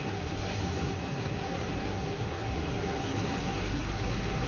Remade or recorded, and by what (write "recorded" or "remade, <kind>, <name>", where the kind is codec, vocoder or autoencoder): remade, codec, SNAC